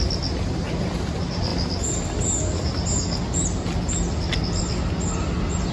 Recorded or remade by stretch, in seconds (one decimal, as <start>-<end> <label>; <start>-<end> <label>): 0.0-5.7 recorded